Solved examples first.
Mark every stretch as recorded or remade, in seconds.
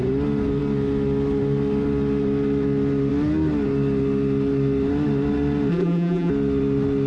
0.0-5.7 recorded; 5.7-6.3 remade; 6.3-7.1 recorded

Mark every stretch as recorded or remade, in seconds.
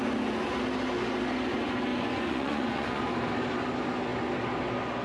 0.0-1.9 recorded; 1.9-3.0 remade; 3.0-5.0 recorded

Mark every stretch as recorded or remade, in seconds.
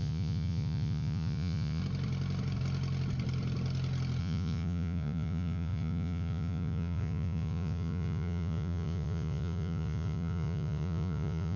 0.0-1.8 remade; 1.8-4.2 recorded; 4.2-11.6 remade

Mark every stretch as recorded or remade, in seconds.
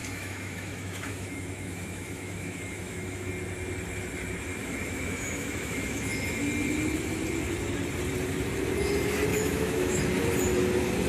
0.0-3.3 remade; 3.3-4.6 recorded; 4.6-6.5 remade; 6.5-9.3 recorded; 9.3-10.0 remade; 10.0-11.1 recorded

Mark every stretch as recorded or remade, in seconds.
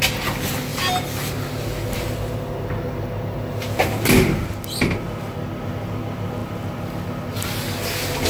0.0-8.3 recorded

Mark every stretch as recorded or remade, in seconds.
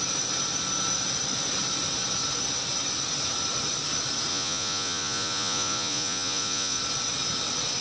0.0-4.3 recorded; 4.3-6.8 remade; 6.8-7.8 recorded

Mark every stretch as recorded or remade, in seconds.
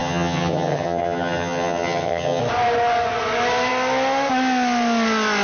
0.0-2.4 remade; 2.4-5.4 recorded